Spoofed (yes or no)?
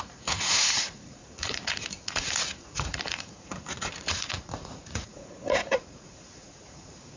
yes